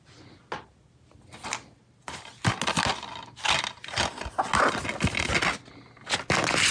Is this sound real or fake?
real